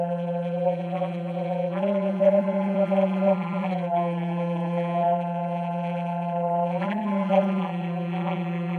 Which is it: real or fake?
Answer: fake